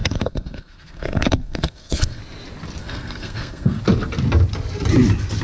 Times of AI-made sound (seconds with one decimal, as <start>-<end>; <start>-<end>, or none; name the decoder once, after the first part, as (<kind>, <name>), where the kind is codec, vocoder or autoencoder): 0.0-2.2 (codec, SNAC); 2.8-3.8